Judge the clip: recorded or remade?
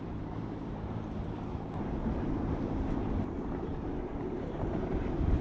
remade